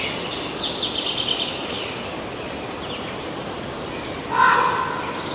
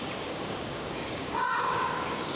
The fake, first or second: second